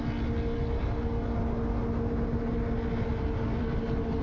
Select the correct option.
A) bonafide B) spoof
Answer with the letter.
A